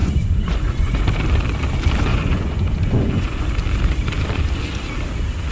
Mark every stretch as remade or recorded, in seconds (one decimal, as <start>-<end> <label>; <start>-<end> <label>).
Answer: 0.0-1.0 remade; 1.0-2.1 recorded; 2.1-3.4 remade; 3.4-5.5 recorded